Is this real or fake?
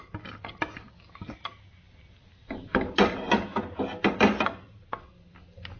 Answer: real